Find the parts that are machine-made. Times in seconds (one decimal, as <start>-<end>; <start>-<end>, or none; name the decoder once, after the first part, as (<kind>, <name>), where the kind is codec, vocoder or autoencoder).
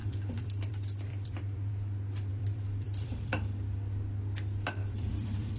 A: 0.0-0.7 (vocoder, BigVGAN v2); 1.1-1.7; 2.3-3.3; 4.8-5.6